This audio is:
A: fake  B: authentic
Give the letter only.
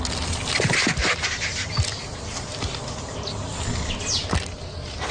B